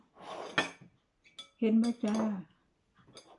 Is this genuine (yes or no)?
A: yes